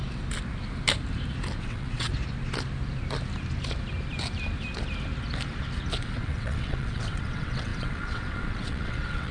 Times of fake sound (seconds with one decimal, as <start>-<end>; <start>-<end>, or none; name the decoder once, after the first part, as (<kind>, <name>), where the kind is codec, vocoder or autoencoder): 1.6-2.1 (vocoder, WaveNeXt); 6.0-9.3